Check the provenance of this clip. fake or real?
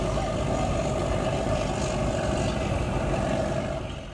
fake